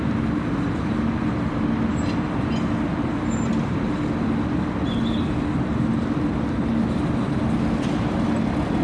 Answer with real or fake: real